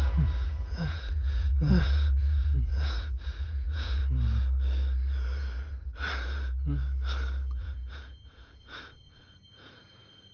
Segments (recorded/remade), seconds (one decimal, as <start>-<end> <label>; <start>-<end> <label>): 0.0-4.0 remade; 4.0-7.6 recorded; 7.6-10.3 remade